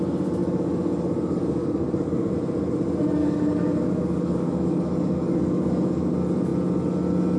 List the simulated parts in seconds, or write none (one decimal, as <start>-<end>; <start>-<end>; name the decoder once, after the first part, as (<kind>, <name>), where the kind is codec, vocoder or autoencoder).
0.4-2.3 (codec, DAC); 3.2-6.1